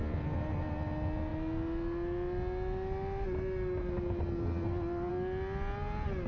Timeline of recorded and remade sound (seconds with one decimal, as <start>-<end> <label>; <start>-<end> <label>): 0.0-6.3 recorded